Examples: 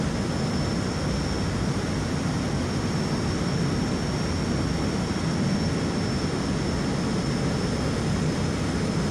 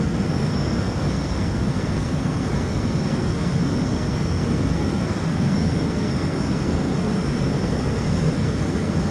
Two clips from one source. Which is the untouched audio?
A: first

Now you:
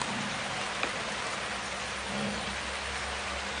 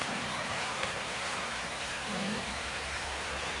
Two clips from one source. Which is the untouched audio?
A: first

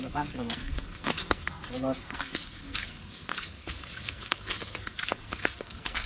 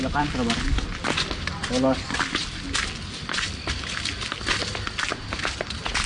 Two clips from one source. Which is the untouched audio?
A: second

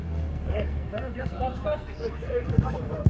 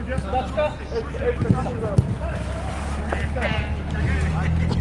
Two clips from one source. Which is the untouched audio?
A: second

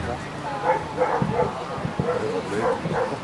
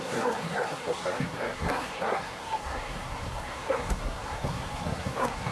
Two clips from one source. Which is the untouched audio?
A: first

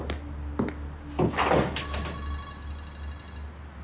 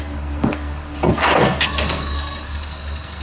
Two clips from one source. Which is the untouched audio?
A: first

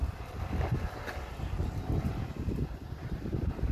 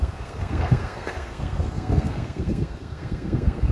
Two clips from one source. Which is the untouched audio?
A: first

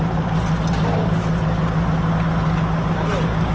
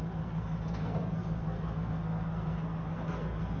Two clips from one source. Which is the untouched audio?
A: first